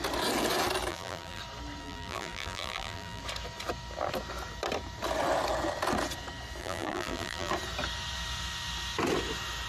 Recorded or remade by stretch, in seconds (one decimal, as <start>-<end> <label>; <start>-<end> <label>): 0.0-0.9 recorded; 0.9-1.4 remade; 1.4-1.8 recorded; 1.8-3.2 remade; 3.2-6.6 recorded; 6.6-7.5 remade; 7.5-9.7 recorded